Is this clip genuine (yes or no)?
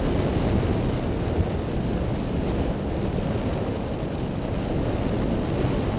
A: yes